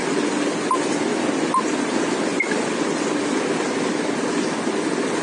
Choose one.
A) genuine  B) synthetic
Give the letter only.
A